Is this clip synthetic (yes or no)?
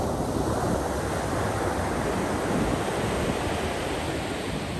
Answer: no